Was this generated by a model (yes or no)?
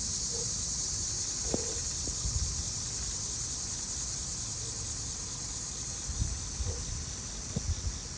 no